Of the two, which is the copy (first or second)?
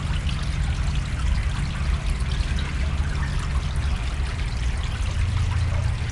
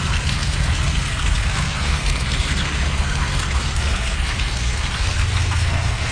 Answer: second